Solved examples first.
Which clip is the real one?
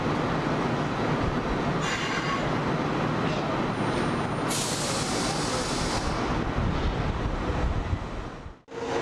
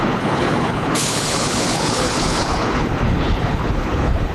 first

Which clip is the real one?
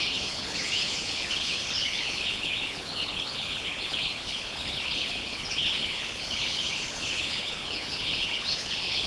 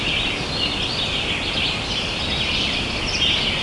second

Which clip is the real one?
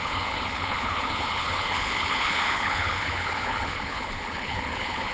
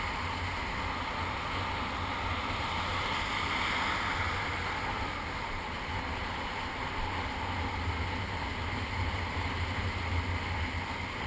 second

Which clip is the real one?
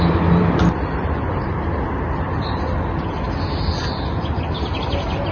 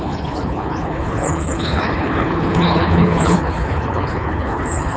first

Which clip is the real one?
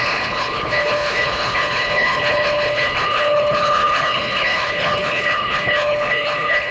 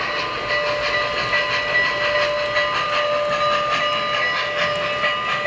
second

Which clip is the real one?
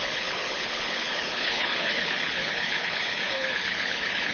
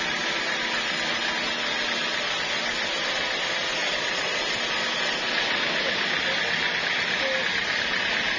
second